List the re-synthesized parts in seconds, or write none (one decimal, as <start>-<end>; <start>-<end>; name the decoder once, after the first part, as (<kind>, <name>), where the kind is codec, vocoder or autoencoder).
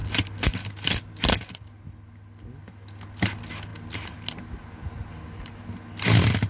none